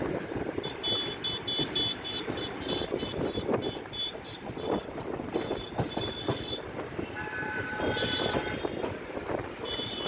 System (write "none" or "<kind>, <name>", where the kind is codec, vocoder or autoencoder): vocoder, BigVGAN v2